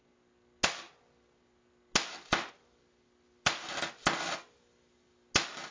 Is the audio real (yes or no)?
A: yes